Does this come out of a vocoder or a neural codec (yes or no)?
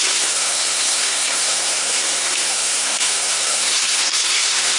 yes